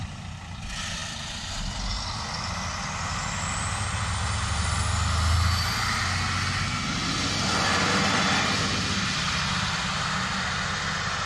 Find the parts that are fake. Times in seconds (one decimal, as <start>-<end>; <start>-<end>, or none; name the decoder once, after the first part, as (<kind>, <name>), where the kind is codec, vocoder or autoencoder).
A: none